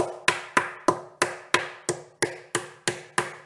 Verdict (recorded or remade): recorded